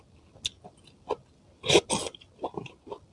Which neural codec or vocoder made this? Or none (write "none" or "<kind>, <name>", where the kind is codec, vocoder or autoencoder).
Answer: none